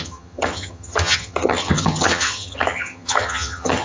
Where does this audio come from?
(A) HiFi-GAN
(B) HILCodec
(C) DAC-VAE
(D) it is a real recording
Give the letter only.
A